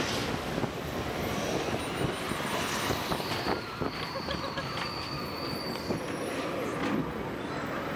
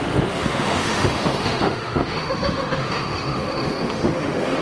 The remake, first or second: second